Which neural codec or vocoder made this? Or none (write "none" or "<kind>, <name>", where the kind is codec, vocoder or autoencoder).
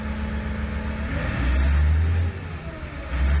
none